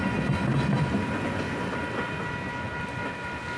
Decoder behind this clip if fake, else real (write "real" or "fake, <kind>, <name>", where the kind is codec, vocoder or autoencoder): real